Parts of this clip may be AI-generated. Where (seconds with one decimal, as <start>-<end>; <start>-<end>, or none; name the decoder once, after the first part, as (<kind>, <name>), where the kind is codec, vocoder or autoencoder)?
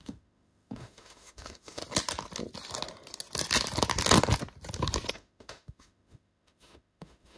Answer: 0.0-1.8 (autoencoder, DAC-VAE); 5.1-7.4